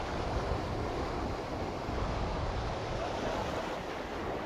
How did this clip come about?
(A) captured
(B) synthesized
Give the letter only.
A